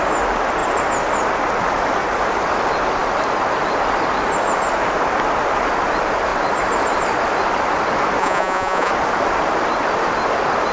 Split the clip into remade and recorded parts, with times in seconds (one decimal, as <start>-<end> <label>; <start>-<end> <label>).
0.0-8.2 recorded; 8.2-8.9 remade; 8.9-10.7 recorded